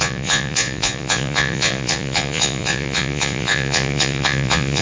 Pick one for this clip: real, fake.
fake